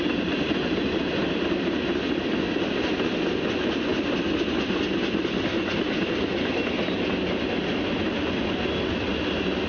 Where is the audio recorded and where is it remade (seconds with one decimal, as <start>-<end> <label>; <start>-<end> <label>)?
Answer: 0.0-9.7 recorded